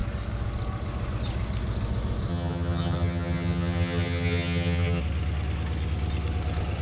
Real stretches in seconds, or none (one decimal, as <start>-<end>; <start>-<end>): 0.0-2.3; 5.0-6.8

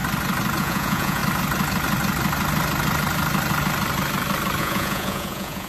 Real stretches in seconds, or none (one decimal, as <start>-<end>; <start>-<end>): 0.0-0.6; 1.2-4.6